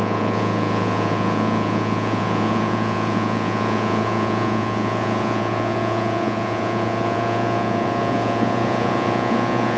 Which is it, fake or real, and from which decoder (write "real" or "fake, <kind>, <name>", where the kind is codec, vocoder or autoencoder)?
fake, vocoder, Vocos